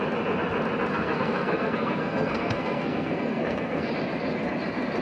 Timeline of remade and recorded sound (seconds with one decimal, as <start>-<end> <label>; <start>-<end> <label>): 0.0-0.9 recorded; 0.9-3.9 remade; 3.9-5.0 recorded